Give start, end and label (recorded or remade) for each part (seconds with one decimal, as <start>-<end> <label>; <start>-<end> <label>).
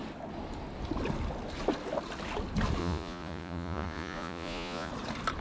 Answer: 0.0-2.8 recorded; 2.8-4.9 remade; 4.9-5.4 recorded